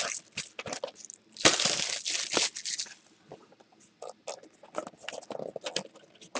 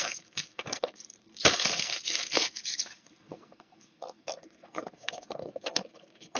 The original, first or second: first